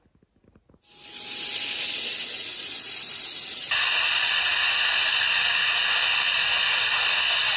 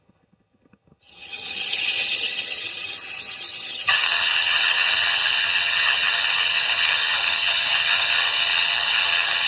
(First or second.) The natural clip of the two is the first